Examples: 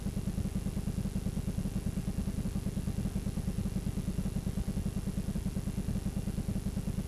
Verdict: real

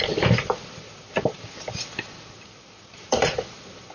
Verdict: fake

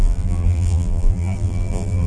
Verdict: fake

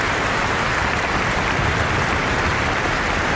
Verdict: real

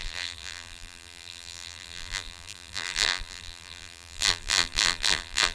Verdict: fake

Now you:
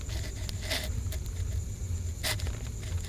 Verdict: real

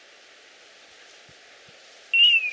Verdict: real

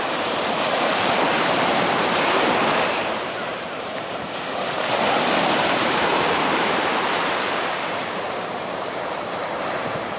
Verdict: fake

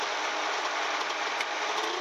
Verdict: real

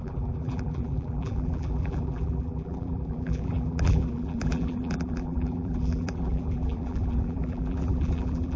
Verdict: fake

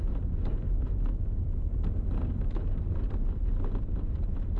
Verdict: fake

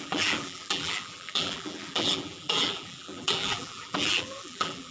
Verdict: fake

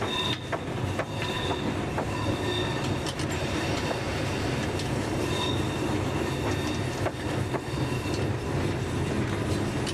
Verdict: real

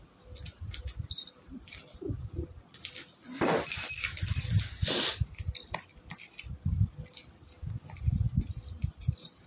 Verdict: real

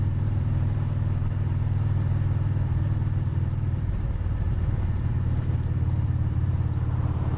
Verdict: fake